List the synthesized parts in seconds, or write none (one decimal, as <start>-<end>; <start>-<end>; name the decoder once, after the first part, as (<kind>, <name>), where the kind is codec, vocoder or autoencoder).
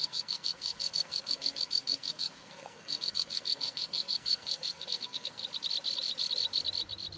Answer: 0.0-5.4 (codec, SNAC)